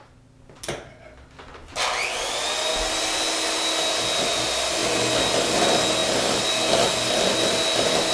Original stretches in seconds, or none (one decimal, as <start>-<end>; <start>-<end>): 0.0-8.1